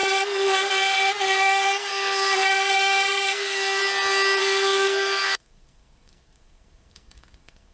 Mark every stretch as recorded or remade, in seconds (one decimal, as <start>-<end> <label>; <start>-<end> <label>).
0.0-3.8 remade; 3.8-4.4 recorded; 4.4-7.7 remade